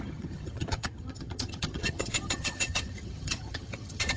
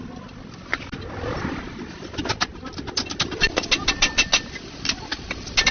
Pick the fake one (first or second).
first